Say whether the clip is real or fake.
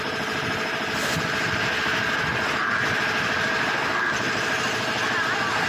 real